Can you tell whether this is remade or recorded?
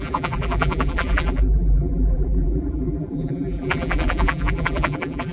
remade